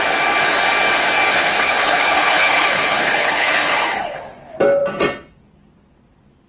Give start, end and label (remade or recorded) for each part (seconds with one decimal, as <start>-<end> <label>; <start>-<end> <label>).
0.0-1.3 recorded; 1.3-4.2 remade; 4.2-6.5 recorded